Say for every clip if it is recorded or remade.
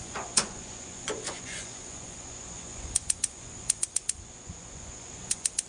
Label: remade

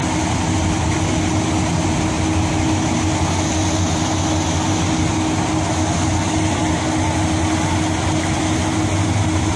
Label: recorded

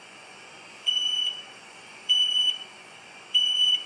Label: remade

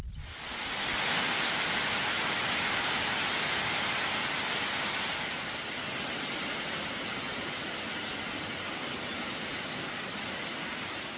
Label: recorded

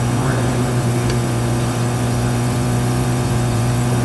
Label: remade